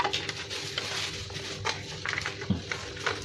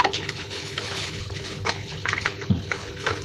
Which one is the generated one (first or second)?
second